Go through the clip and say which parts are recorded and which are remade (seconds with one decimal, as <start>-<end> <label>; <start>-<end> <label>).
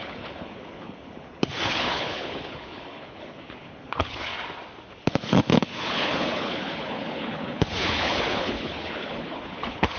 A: 0.0-4.3 remade; 4.3-4.9 recorded; 4.9-10.0 remade